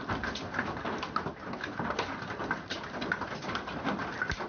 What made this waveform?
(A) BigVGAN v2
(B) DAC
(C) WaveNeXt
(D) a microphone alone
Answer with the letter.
D